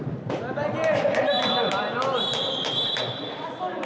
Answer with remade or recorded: recorded